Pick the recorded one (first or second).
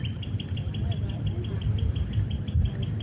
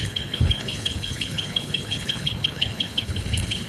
first